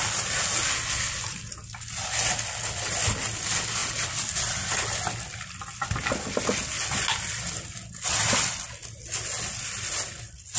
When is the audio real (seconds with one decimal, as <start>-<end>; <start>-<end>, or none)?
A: 0.0-10.6